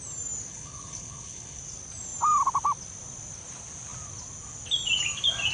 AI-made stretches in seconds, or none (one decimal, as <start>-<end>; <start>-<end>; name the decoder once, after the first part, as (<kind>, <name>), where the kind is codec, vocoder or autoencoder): 0.5-1.6 (codec, HILCodec)